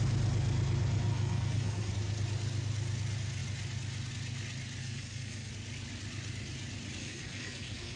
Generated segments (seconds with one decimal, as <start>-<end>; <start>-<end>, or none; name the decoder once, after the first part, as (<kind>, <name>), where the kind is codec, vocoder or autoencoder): 1.1-1.9 (codec, SNAC); 4.8-5.5; 7.0-8.0